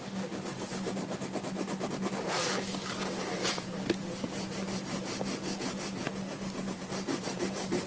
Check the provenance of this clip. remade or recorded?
recorded